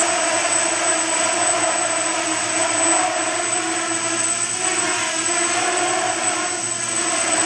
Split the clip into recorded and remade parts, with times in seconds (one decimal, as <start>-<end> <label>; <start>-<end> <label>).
0.0-7.5 recorded